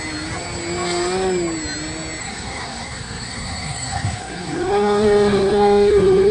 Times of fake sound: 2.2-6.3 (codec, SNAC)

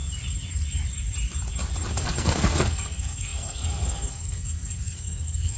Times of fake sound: 1.9-5.6 (codec, SNAC)

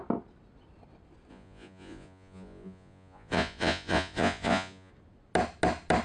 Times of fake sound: 1.3-4.9 (vocoder, Vocos)

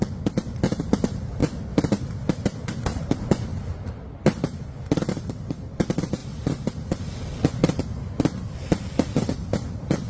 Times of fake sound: 3.5-4.6 (vocoder, BigVGAN v2); 9.4-10.1

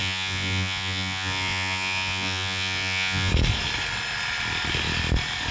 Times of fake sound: 0.0-3.3 (vocoder, Vocos)